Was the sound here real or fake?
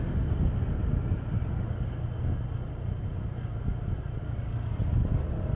real